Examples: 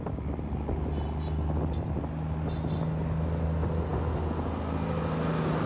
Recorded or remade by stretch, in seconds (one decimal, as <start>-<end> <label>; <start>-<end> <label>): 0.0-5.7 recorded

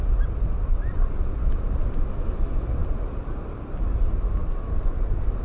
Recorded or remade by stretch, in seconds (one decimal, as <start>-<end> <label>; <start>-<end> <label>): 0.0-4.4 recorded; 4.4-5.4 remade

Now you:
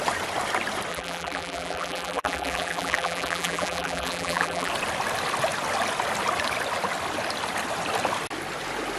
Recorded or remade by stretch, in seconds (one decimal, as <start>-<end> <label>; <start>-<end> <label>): 0.0-0.9 recorded; 0.9-4.7 remade; 4.7-9.0 recorded

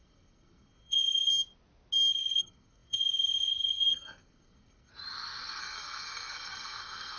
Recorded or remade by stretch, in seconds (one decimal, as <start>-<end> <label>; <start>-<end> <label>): 0.0-1.3 remade; 1.3-2.1 recorded; 2.1-4.9 remade; 4.9-5.6 recorded; 5.6-7.2 remade